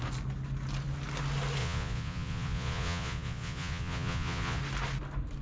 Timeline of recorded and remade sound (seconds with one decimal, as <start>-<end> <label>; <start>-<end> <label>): 0.0-1.6 recorded; 1.6-4.6 remade; 4.6-5.4 recorded